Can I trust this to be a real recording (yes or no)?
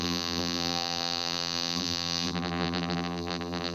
no